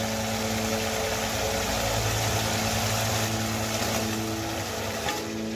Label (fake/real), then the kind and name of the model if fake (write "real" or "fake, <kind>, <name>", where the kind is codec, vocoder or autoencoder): real